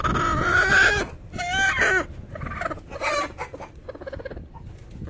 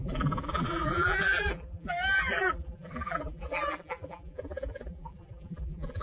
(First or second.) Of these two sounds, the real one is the first